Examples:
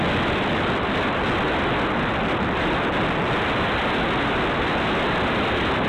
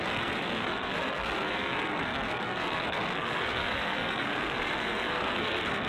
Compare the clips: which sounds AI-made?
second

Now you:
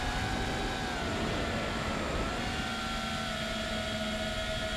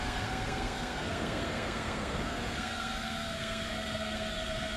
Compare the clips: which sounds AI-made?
second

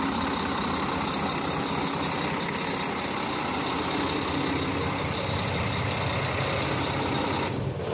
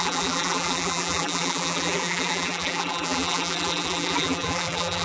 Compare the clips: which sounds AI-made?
second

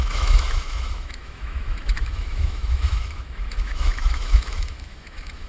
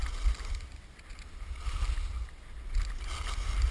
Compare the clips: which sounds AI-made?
first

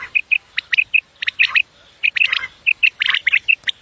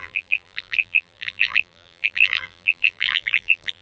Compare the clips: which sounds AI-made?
second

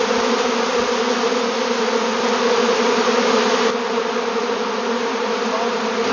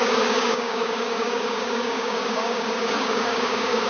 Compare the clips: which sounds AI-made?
second